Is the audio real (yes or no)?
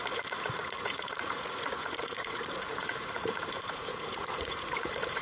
no